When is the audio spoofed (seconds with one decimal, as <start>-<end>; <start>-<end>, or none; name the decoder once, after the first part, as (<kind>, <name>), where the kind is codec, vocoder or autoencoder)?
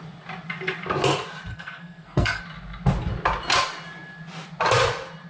1.5-2.4 (codec, SNAC)